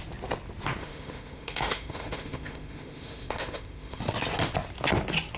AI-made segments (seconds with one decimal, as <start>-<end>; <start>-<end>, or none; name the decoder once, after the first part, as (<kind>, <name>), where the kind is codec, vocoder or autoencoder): 0.8-4.0 (autoencoder, DAC-VAE)